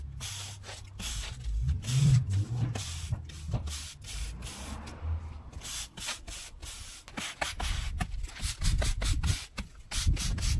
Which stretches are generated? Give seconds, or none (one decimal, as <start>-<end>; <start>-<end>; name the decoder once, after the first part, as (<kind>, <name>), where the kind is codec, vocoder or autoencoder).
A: 0.0-6.6 (vocoder, BigVGAN v2); 8.0-10.6